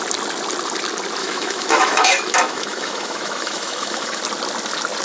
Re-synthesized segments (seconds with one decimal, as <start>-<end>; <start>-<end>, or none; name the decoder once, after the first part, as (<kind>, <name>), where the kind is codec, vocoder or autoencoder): 1.2-4.2 (autoencoder, DAC-VAE)